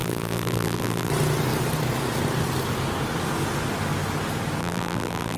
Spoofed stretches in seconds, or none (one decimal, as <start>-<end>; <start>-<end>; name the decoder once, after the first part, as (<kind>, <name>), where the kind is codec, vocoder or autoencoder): 0.0-1.1 (vocoder, BigVGAN v2); 4.6-5.4